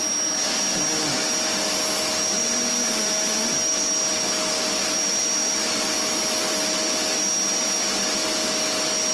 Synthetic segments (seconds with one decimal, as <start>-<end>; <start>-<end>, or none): none